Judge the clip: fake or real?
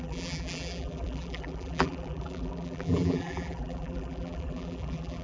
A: fake